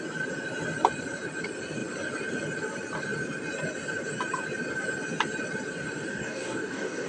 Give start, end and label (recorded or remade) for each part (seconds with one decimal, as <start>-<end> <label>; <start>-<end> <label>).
0.0-6.1 recorded; 6.1-7.1 remade

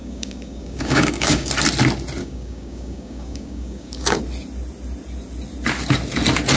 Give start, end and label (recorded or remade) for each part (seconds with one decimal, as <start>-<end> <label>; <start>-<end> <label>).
0.0-1.5 remade; 1.5-2.2 recorded; 2.2-4.2 remade; 4.2-6.6 recorded

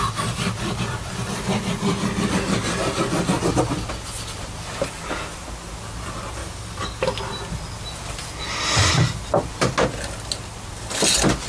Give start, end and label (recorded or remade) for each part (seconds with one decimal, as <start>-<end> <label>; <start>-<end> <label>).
0.0-6.4 recorded; 6.4-7.0 remade; 7.0-11.5 recorded

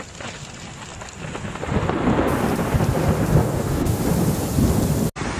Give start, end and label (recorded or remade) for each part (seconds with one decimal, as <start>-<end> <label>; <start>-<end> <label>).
0.0-3.4 recorded; 3.4-4.0 remade; 4.0-5.4 recorded

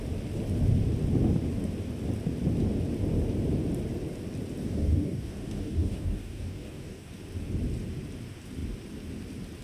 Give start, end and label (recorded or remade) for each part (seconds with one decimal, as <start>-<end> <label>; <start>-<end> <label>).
0.0-4.6 recorded; 4.6-7.1 remade; 7.1-9.6 recorded

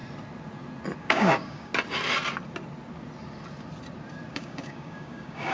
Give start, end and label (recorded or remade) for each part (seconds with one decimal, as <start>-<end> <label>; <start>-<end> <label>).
0.0-1.0 recorded; 1.0-1.7 remade; 1.7-4.3 recorded; 4.3-5.5 remade

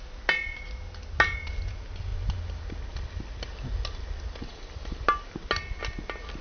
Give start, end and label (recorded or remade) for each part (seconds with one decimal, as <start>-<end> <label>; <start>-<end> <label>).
0.0-6.4 recorded

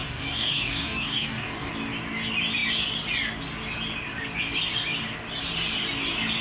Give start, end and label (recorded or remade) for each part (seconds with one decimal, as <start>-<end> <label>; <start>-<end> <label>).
0.0-1.7 remade; 1.7-6.4 recorded